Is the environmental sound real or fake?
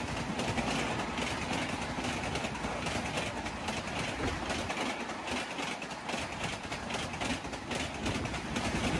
real